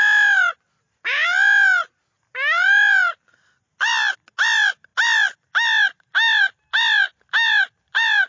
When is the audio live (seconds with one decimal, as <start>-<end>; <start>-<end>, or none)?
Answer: 0.0-8.3